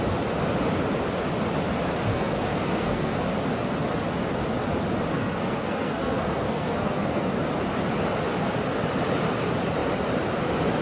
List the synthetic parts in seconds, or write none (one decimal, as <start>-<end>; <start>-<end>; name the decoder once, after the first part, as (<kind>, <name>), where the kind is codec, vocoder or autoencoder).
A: 2.1-3.2 (codec, SNAC); 5.1-7.3